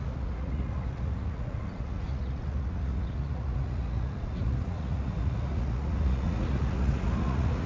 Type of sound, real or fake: fake